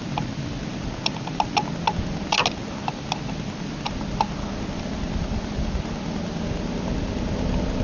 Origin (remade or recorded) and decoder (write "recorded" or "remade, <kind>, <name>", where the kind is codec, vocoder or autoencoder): recorded